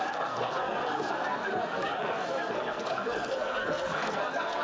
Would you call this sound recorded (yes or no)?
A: no